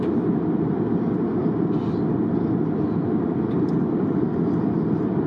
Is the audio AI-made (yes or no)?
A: no